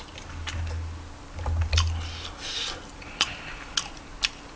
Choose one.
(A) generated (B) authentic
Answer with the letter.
B